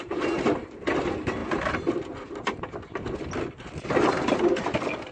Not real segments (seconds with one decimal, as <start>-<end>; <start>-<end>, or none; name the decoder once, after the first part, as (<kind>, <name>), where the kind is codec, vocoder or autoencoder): none